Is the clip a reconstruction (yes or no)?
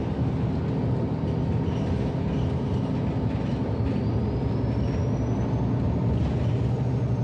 no